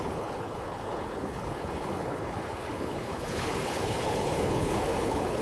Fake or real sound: fake